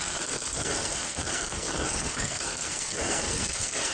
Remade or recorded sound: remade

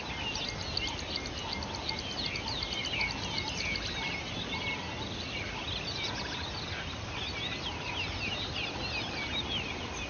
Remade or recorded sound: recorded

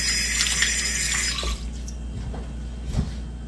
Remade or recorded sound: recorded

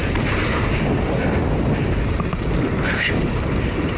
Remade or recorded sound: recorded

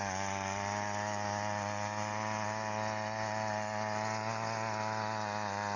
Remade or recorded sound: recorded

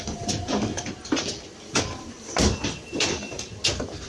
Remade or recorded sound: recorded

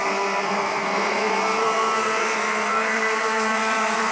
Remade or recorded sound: remade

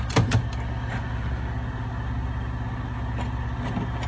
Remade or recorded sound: recorded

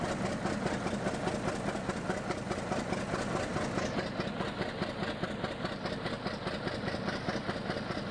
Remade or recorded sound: recorded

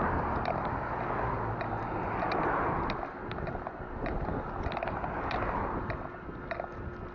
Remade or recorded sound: recorded